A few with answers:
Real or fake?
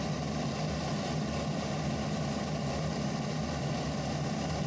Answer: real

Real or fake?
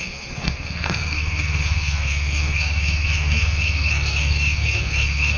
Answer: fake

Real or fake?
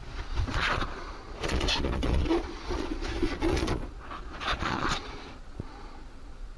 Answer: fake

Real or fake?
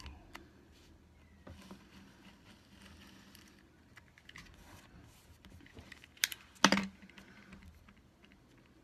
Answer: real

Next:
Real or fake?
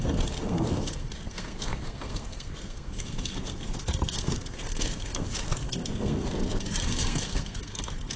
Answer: fake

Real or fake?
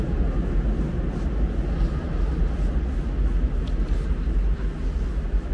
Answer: real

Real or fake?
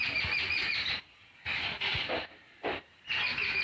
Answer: fake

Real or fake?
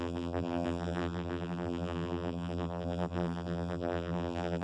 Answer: fake